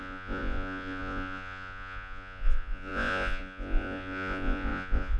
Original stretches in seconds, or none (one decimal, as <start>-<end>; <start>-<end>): none